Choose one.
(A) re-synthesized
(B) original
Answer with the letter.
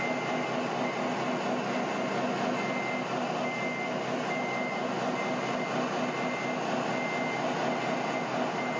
B